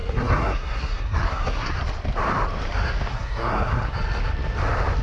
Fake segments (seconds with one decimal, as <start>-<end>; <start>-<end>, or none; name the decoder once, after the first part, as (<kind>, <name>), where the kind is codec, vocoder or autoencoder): 0.0-1.7 (codec, SNAC); 3.1-3.9